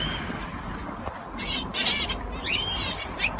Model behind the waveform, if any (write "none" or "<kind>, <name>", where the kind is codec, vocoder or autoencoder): none